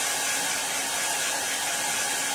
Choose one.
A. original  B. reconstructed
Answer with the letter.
A